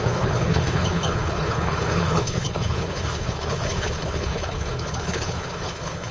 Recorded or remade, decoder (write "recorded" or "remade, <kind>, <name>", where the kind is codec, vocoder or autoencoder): remade, codec, HILCodec